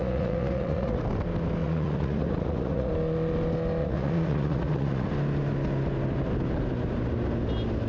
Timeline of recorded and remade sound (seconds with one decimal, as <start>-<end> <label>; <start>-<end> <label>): 0.0-1.0 remade; 1.0-1.6 recorded; 1.6-2.9 remade; 2.9-3.8 recorded; 3.8-5.1 remade; 5.1-7.9 recorded